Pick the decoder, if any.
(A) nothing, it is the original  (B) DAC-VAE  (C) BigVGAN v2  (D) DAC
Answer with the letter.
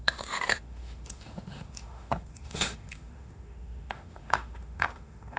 B